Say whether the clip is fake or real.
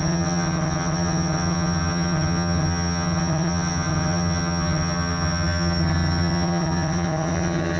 fake